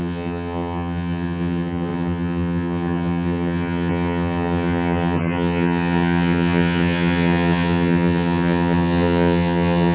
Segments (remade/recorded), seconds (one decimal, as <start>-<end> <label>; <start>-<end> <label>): 0.0-9.9 remade